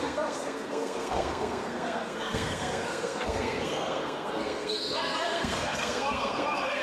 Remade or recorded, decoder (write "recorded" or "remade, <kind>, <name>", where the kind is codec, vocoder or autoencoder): remade, codec, SNAC